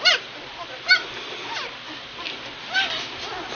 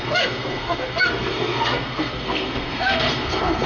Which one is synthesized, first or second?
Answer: second